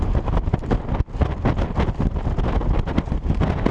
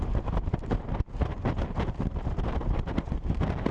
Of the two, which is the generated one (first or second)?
second